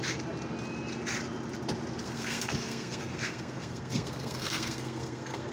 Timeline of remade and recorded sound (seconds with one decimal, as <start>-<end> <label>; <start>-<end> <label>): 0.0-2.0 recorded; 2.0-5.5 remade

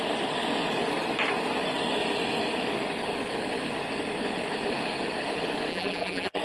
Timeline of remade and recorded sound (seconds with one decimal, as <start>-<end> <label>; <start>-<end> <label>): 0.0-5.7 recorded; 5.7-6.4 remade

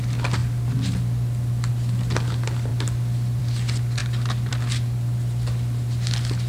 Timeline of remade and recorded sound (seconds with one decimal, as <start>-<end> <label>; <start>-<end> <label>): 0.0-6.5 recorded

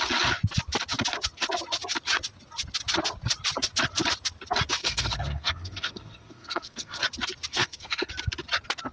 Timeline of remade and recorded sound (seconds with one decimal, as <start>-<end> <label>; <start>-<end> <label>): 0.0-4.8 recorded; 4.8-7.0 remade; 7.0-7.5 recorded; 7.5-8.1 remade; 8.1-8.9 recorded

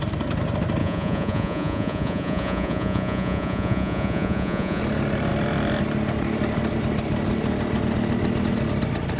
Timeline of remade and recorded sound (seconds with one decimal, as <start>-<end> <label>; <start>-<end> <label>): 0.0-0.8 recorded; 0.8-4.8 remade; 4.8-9.2 recorded

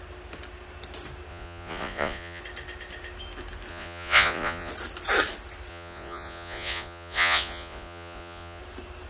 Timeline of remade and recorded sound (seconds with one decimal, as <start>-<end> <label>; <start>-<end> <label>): 0.0-1.3 recorded; 1.3-2.4 remade; 2.4-3.7 recorded; 3.7-4.7 remade; 4.7-5.7 recorded; 5.7-8.6 remade; 8.6-9.1 recorded

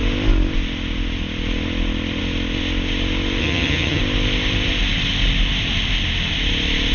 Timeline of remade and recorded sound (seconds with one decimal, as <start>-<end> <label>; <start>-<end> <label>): 0.0-3.4 recorded; 3.4-4.0 remade; 4.0-6.9 recorded